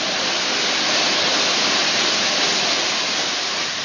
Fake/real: real